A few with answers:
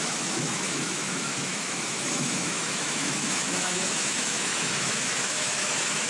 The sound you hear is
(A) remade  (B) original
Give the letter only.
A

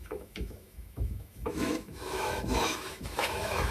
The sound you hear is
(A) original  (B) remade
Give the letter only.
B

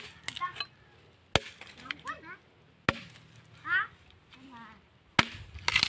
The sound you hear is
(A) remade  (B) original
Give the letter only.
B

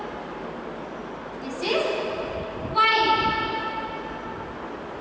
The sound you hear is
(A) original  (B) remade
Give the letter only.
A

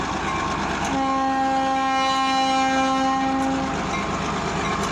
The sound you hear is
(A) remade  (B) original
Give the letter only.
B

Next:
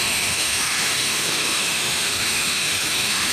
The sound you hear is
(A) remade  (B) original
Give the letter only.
A